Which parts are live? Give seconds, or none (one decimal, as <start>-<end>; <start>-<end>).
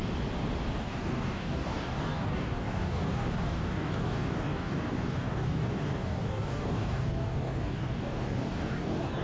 0.0-0.8